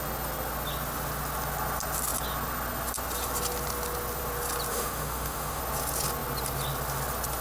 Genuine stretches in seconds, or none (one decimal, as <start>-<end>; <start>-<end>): 0.0-4.7; 5.6-7.4